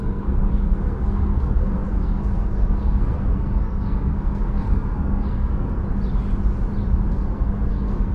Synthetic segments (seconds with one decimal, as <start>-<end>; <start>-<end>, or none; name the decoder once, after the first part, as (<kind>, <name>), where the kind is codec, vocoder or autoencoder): 0.0-5.8 (codec, SNAC); 7.1-8.1